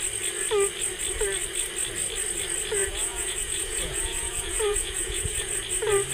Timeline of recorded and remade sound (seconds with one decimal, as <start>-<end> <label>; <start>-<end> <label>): 0.0-2.8 recorded; 2.8-5.5 remade; 5.5-6.1 recorded